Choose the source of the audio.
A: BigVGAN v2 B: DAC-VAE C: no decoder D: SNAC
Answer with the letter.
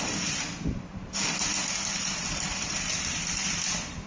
A